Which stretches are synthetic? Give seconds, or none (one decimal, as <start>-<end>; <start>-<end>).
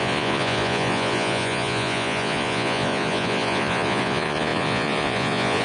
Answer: 0.0-5.6